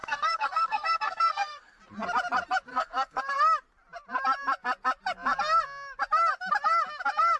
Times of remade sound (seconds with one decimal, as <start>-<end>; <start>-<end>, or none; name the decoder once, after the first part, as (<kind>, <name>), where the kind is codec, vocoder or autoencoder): 0.0-1.8 (codec, SNAC); 2.7-3.2